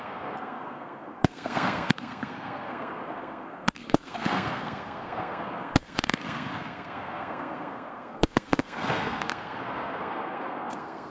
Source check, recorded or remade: remade